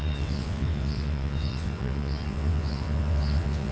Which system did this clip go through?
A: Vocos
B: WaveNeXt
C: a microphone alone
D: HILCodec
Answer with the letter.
B